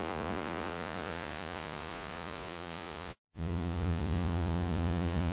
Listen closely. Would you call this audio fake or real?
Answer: fake